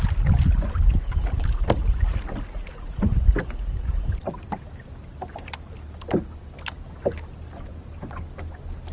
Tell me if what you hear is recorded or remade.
recorded